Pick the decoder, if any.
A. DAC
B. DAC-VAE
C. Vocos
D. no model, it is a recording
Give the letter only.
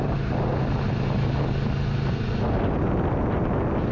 D